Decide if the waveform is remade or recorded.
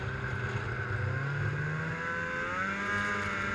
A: recorded